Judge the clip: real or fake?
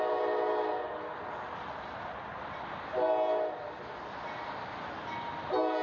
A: real